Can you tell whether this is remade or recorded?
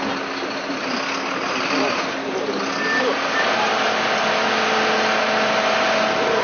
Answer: recorded